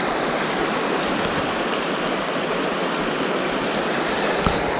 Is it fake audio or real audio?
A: real